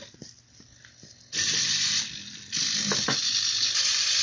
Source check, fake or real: fake